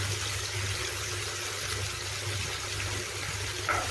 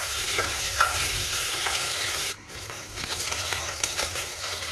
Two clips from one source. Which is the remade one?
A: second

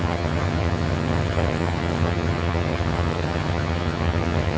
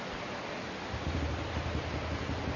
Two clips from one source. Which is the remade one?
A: first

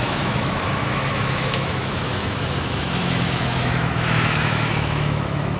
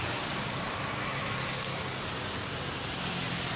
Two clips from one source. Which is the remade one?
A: first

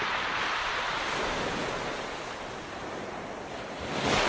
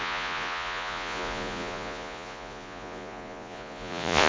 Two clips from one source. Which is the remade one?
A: second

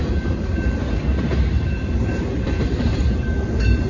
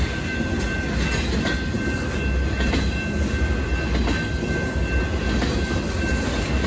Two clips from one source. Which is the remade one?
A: first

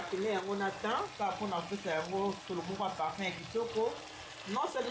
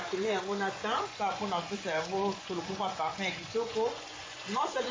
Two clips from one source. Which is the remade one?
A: second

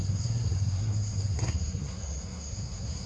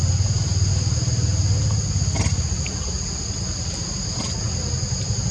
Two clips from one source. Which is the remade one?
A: first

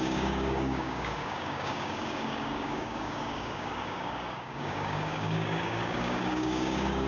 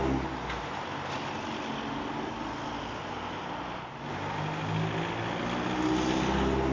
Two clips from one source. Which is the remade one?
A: first